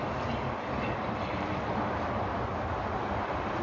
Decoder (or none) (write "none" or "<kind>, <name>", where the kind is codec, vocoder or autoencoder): none